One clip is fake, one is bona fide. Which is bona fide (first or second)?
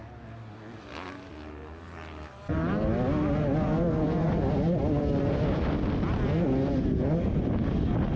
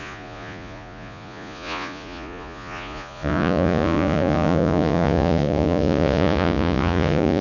first